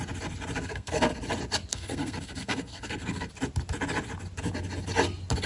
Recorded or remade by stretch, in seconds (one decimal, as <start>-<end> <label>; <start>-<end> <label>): 0.0-0.6 recorded; 0.6-1.1 remade; 1.1-1.7 recorded; 1.7-3.3 remade; 3.3-5.5 recorded